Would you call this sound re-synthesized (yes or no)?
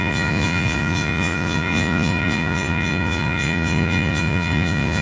yes